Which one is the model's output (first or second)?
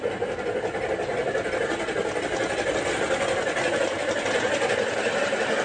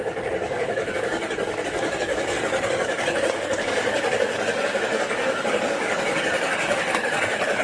second